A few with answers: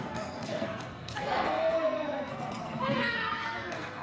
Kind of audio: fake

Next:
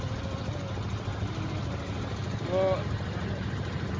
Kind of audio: real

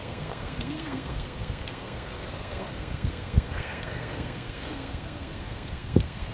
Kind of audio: fake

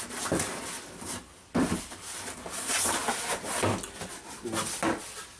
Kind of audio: real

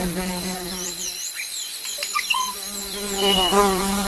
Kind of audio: fake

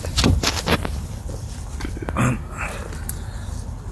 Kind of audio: fake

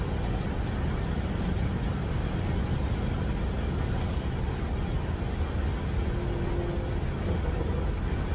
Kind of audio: real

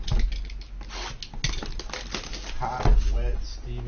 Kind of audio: real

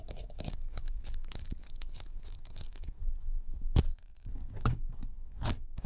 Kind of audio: fake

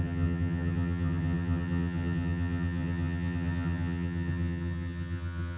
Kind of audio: fake